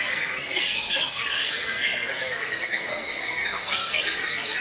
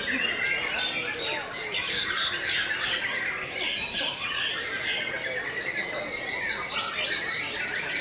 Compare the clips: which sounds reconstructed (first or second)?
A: first